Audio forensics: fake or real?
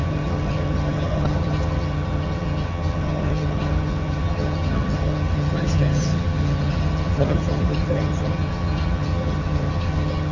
fake